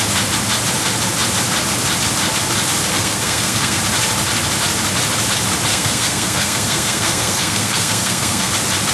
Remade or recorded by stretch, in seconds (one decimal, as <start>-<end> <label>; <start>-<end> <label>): 0.0-2.9 recorded; 2.9-3.8 remade; 3.8-5.7 recorded; 5.7-8.5 remade; 8.5-8.9 recorded